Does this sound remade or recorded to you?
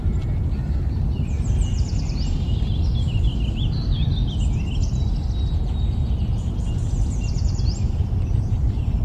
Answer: recorded